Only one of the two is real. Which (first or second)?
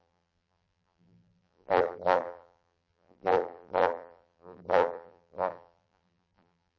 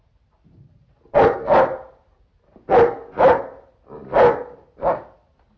second